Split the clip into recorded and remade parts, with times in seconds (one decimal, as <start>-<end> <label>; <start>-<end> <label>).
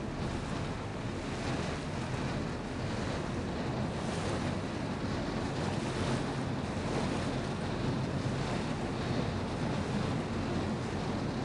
0.0-11.4 recorded